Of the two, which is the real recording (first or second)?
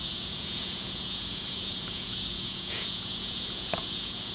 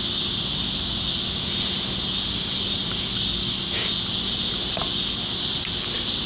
second